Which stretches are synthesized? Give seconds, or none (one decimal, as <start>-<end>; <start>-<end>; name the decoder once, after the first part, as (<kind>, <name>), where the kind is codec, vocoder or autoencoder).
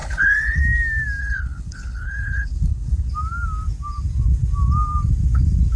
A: 0.0-0.6 (codec, HILCodec); 1.2-3.1